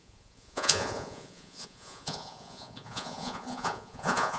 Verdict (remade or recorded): remade